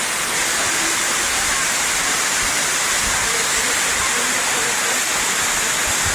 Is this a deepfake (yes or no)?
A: no